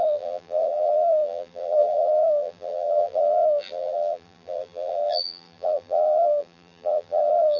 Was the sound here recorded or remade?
remade